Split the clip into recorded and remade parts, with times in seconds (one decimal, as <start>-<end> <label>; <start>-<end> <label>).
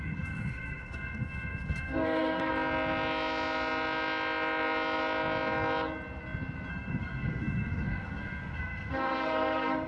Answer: 0.0-2.5 remade; 2.5-6.7 recorded; 6.7-9.9 remade